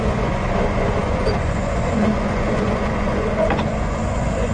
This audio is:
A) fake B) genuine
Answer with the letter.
A